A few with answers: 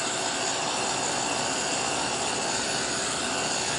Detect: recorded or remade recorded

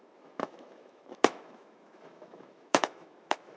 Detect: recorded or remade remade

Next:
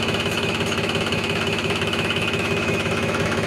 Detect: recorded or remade remade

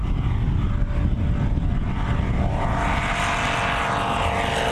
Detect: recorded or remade recorded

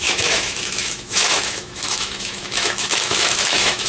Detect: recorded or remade remade